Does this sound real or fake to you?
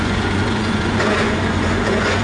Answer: fake